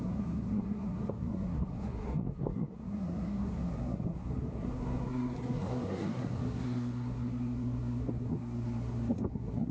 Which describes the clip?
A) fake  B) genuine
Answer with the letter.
A